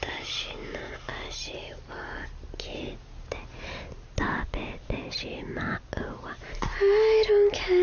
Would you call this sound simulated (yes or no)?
no